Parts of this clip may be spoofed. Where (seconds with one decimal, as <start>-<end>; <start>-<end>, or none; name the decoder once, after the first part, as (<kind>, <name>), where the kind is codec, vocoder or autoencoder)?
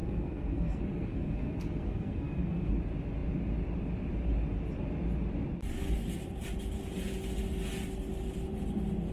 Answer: 0.0-2.7 (codec, SNAC)